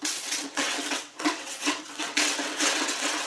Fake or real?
fake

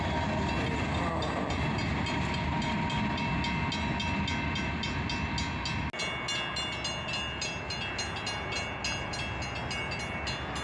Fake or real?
real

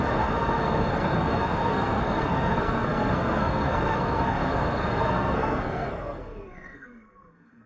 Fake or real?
fake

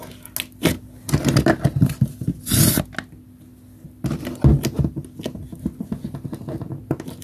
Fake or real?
real